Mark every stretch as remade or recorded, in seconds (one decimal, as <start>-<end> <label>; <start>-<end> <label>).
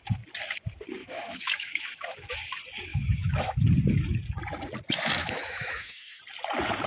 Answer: 0.0-1.0 recorded; 1.0-2.3 remade; 2.3-2.9 recorded; 2.9-3.6 remade; 3.6-5.2 recorded; 5.2-6.2 remade; 6.2-6.9 recorded